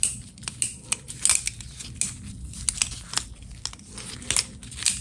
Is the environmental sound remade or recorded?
recorded